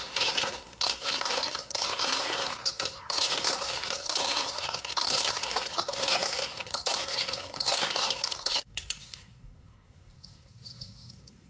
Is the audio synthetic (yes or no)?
yes